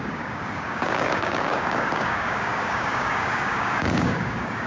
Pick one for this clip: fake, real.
fake